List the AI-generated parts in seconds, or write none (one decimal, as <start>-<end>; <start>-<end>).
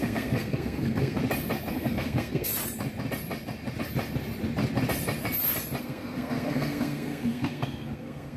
0.0-1.2; 1.7-2.5; 5.8-8.4